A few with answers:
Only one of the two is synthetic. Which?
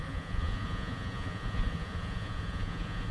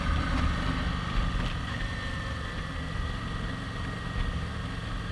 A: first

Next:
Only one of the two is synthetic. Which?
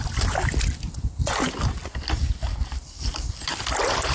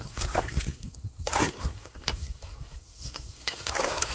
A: second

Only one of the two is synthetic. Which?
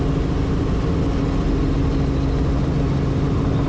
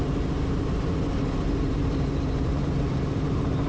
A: second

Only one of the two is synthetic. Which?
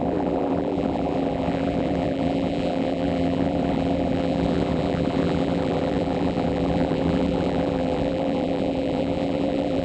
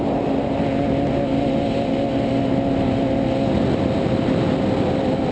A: first